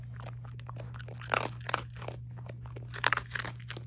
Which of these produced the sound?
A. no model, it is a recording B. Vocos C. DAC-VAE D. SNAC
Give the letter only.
A